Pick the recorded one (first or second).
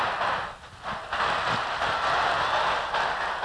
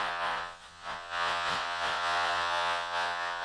first